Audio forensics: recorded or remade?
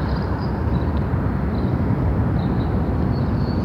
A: remade